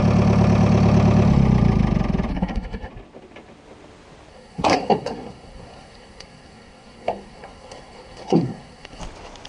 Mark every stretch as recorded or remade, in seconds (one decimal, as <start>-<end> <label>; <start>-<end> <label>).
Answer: 0.0-2.3 recorded; 2.3-2.9 remade; 2.9-4.3 recorded; 4.3-9.0 remade; 9.0-9.5 recorded